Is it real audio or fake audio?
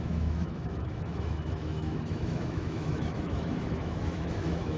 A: fake